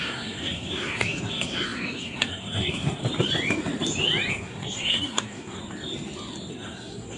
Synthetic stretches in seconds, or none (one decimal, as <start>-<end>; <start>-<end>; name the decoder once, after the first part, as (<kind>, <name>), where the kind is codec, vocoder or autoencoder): 0.0-3.0 (codec, SNAC); 4.3-5.6; 6.5-7.2